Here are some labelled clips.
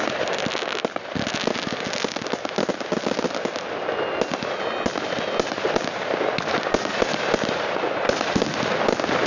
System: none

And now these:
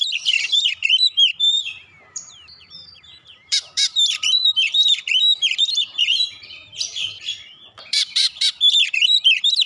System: vocoder, BigVGAN v2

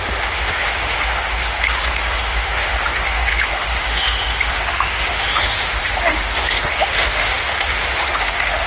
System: autoencoder, DAC-VAE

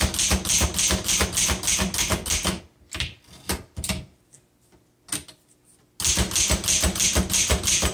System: none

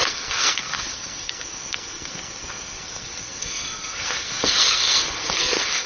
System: codec, SNAC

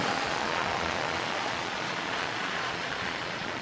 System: vocoder, Vocos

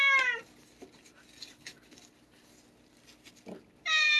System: none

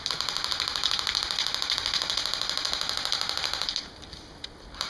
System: none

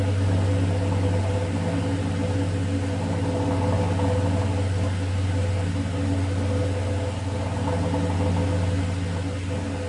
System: none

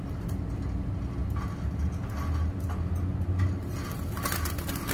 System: none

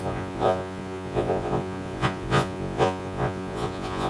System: vocoder, Vocos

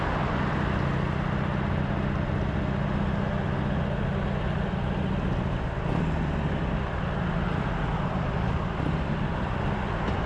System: none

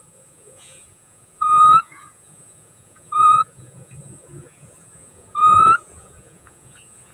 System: vocoder, Vocos